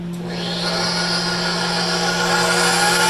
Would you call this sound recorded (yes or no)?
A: yes